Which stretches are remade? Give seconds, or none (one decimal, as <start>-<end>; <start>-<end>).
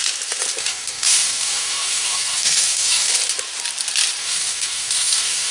0.6-3.1; 4.2-5.5